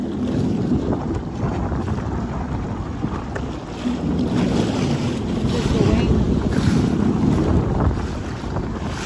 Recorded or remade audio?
recorded